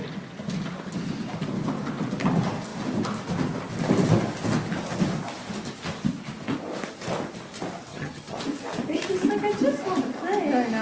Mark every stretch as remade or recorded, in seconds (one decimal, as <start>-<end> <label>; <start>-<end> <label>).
0.0-7.9 recorded; 7.9-8.4 remade; 8.4-10.8 recorded